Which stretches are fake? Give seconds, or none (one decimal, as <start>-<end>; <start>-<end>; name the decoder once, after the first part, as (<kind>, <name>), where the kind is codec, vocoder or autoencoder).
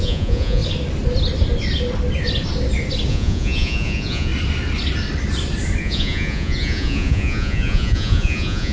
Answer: 0.0-0.6 (vocoder, Vocos); 3.1-4.3; 5.8-8.7